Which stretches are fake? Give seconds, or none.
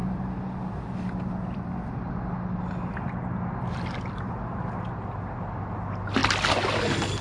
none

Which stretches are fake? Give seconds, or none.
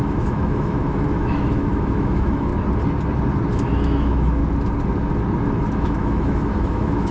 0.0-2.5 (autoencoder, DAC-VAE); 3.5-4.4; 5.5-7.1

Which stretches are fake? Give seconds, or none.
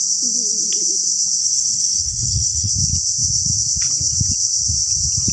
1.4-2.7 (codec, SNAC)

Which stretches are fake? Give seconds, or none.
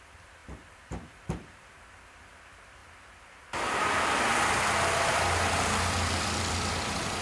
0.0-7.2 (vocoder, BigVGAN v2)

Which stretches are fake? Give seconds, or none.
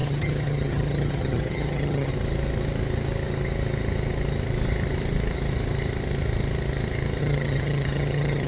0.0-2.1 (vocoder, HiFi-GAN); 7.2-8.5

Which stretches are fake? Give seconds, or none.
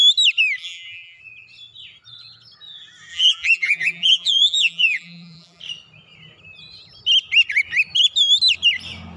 0.6-1.2 (vocoder, BigVGAN v2); 3.1-5.6